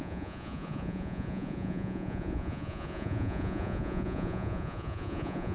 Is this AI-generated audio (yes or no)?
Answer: yes